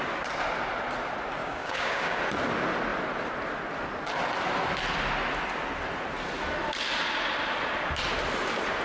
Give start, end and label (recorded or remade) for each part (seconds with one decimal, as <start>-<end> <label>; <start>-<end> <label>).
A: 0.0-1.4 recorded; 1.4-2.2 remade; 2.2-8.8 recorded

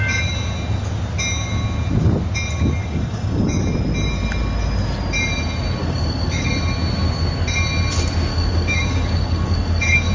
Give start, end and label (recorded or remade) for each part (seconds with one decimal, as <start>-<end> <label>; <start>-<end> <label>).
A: 0.0-2.8 recorded; 2.8-3.6 remade; 3.6-5.8 recorded; 5.8-6.5 remade; 6.5-8.3 recorded; 8.3-10.1 remade

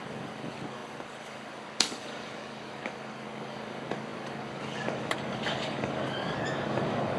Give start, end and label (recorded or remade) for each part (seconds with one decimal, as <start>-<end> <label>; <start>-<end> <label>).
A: 0.0-7.2 remade

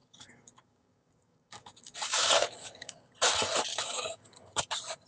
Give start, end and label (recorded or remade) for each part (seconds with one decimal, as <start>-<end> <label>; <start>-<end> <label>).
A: 0.0-3.1 remade; 3.1-3.7 recorded; 3.7-4.6 remade; 4.6-5.1 recorded